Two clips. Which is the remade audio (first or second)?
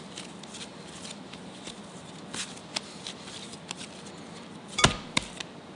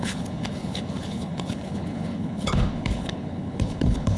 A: second